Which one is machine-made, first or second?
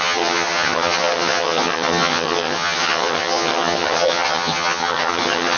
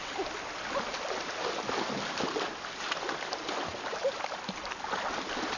first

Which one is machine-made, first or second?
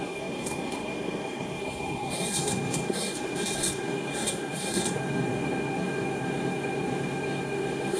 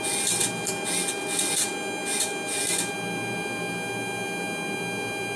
first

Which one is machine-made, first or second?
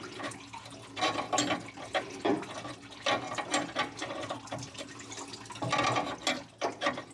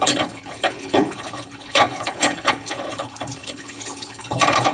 second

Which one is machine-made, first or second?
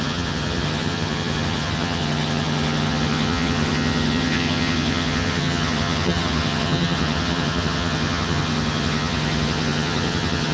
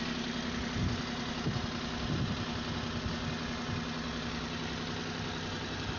first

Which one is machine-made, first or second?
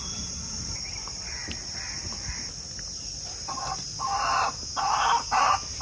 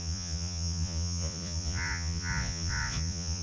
second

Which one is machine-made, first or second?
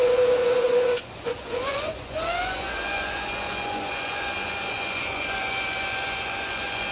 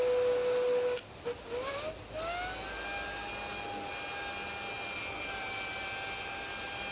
first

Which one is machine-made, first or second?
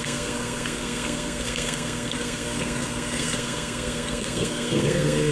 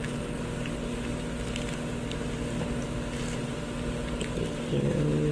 first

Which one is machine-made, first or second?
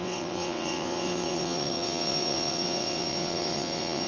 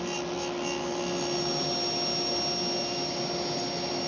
first